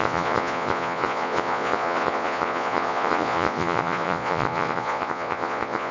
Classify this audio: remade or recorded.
remade